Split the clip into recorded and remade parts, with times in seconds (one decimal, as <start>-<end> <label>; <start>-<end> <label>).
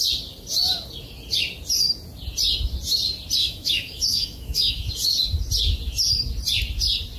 0.0-3.4 recorded; 3.4-4.9 remade; 4.9-7.2 recorded